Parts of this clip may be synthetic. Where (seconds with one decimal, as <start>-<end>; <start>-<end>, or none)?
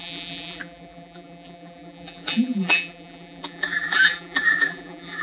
0.0-5.2